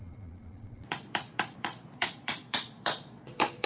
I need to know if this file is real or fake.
fake